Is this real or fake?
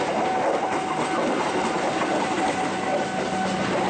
real